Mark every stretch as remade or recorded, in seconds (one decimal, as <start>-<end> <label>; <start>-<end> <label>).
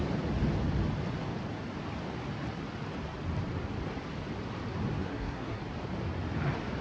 0.0-5.0 recorded; 5.0-5.6 remade; 5.6-6.8 recorded